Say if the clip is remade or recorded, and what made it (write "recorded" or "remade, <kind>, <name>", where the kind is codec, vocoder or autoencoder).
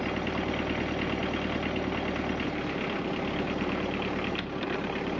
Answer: recorded